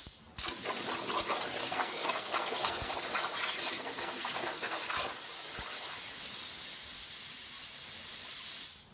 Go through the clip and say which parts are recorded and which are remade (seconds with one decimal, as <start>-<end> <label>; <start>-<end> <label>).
0.0-1.6 recorded; 1.6-2.9 remade; 2.9-3.7 recorded; 3.7-4.9 remade; 4.9-8.9 recorded